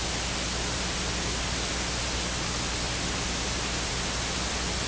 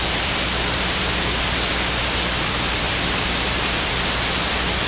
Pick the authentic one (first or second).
first